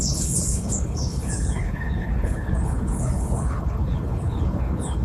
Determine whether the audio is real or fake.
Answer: fake